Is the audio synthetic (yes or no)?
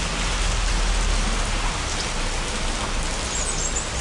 no